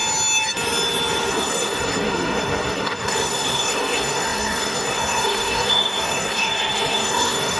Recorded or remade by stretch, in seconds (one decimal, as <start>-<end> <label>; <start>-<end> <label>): 0.0-1.3 recorded; 1.3-7.6 remade